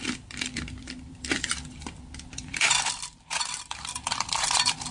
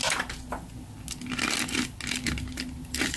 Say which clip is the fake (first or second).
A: first